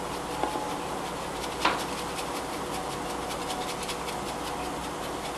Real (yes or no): yes